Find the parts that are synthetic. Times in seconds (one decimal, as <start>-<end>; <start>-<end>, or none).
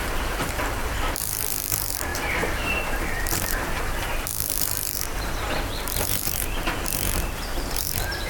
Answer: 0.0-8.3